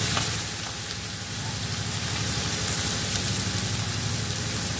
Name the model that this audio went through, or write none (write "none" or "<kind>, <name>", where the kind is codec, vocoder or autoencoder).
none